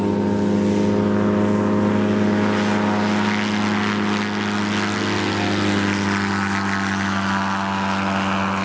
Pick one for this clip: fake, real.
real